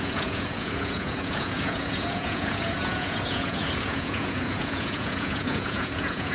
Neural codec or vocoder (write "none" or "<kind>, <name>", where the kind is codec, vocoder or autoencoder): vocoder, Vocos